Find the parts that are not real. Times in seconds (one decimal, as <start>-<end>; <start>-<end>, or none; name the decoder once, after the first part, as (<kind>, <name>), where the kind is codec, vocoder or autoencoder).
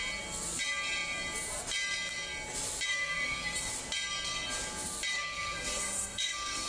2.9-3.7 (codec, SNAC); 5.1-6.7